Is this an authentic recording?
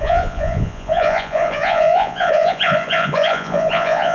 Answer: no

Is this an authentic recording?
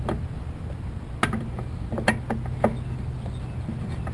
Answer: yes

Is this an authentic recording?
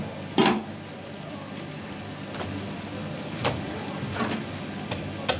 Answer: yes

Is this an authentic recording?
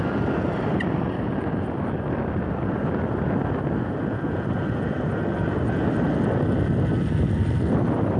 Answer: yes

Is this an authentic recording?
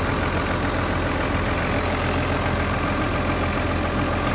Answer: yes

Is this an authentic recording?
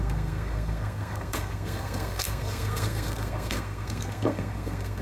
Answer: no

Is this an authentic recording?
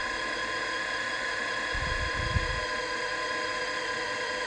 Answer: yes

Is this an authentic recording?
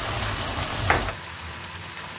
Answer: yes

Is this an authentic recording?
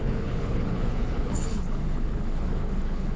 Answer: no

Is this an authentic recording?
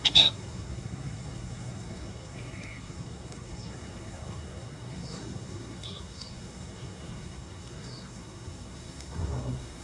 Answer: no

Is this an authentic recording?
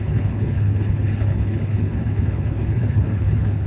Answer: no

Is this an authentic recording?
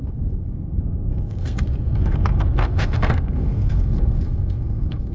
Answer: no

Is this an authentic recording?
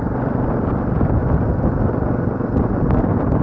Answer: yes